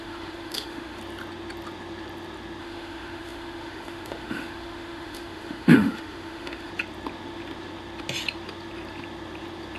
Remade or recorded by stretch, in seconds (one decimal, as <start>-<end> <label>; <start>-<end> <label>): 0.0-1.0 remade; 1.0-2.6 recorded; 2.6-6.7 remade; 6.7-9.8 recorded